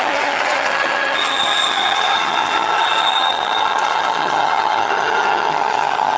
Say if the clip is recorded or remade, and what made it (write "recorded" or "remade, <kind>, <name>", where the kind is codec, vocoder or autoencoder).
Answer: remade, vocoder, HiFi-GAN